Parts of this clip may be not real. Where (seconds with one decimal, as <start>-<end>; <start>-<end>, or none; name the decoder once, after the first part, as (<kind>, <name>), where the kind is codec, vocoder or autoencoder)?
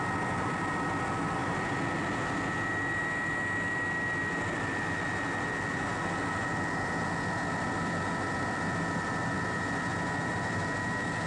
none